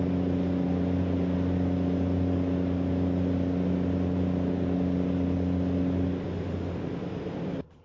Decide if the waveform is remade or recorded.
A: recorded